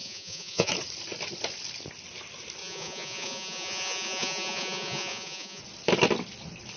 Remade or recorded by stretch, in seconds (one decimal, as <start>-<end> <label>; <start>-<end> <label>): 0.0-0.7 remade; 0.7-2.6 recorded; 2.6-5.6 remade; 5.6-6.8 recorded